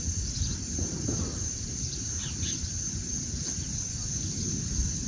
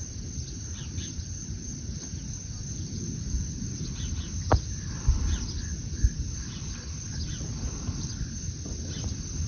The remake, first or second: first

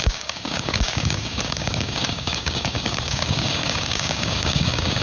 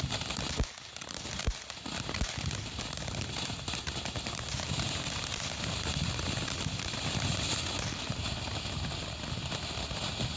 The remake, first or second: first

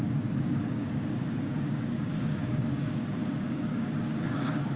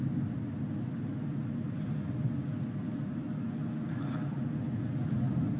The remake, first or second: first